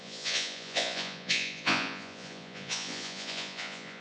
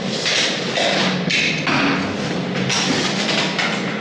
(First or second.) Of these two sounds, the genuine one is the second